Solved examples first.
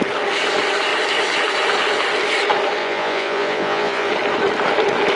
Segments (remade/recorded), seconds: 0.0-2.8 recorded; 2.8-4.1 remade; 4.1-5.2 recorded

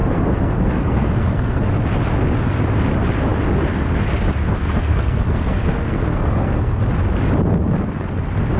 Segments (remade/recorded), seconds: 0.0-1.7 remade; 1.7-4.6 recorded; 4.6-6.7 remade; 6.7-8.6 recorded